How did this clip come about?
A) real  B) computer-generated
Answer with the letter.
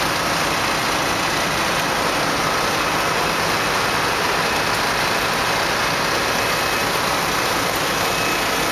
A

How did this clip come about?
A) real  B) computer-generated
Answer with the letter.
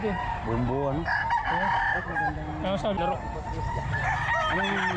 A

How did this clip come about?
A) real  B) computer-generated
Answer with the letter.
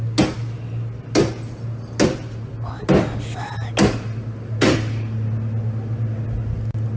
A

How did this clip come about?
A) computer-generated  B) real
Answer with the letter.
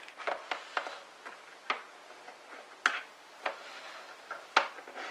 B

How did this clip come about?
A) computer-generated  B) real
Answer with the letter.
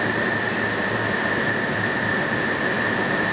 B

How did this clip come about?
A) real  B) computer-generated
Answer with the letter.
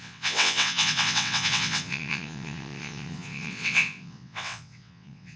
B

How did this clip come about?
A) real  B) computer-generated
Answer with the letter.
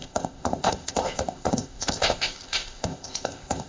B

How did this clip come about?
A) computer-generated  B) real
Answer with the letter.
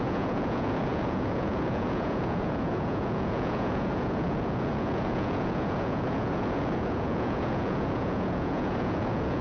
A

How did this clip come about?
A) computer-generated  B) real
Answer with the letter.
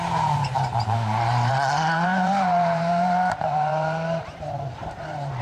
A